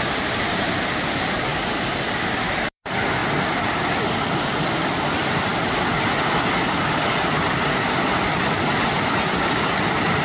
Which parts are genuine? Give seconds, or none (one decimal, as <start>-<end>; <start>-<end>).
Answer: 1.5-2.4; 3.2-4.8; 5.5-7.7